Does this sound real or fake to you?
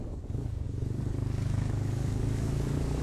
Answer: fake